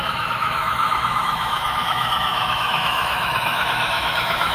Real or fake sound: fake